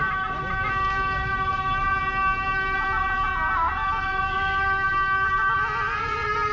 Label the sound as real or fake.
real